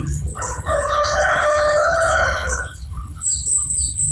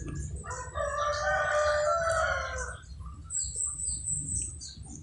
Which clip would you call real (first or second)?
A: second